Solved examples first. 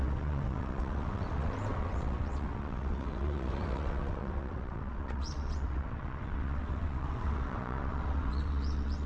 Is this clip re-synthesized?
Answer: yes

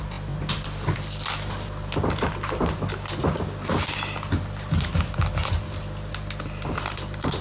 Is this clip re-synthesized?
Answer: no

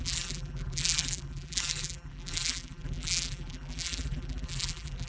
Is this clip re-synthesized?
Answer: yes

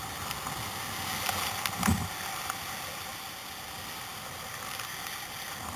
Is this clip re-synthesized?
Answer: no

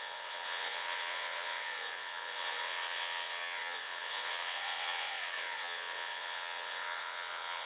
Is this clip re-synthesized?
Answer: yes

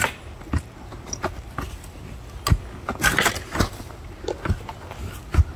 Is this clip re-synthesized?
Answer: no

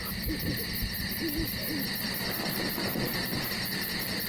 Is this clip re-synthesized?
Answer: no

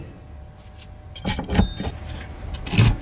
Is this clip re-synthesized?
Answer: no